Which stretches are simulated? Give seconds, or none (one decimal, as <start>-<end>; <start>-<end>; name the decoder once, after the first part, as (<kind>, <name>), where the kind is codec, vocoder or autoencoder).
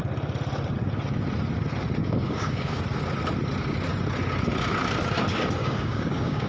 2.0-2.8 (codec, DAC); 5.6-6.5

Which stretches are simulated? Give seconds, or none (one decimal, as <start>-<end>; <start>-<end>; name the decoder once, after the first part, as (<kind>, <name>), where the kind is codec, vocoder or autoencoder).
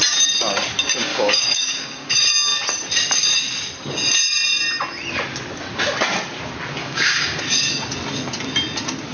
1.1-2.1 (codec, DAC); 6.8-7.4